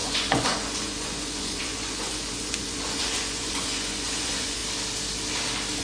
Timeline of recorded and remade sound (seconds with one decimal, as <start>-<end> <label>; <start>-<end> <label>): 0.0-4.6 remade; 4.6-5.8 recorded